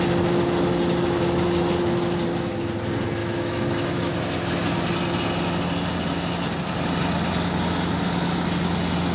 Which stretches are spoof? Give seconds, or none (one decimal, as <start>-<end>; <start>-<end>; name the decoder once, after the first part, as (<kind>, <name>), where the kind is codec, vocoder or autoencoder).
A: 3.2-4.1 (autoencoder, DAC-VAE)